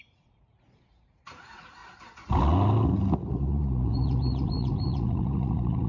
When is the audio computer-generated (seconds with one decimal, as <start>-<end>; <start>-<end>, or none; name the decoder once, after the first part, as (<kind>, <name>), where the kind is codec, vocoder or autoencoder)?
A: 0.0-1.8 (vocoder, Vocos); 3.3-5.9